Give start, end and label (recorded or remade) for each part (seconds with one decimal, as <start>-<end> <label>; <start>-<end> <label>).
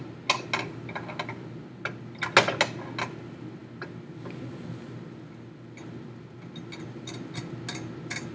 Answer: 0.0-8.3 recorded